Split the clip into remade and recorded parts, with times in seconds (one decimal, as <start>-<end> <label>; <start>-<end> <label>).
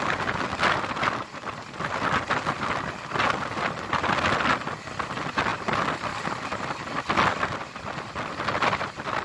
0.0-9.2 recorded